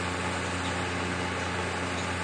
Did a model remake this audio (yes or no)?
no